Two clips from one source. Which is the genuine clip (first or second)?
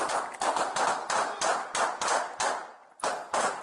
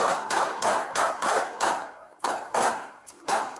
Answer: first